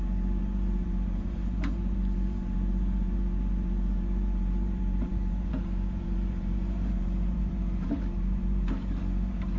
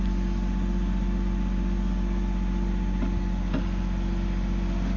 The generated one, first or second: first